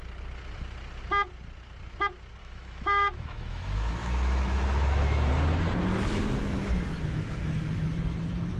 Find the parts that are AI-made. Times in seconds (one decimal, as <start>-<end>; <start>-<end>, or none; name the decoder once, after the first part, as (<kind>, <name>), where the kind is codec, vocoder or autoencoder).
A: 2.4-5.3 (autoencoder, DAC-VAE)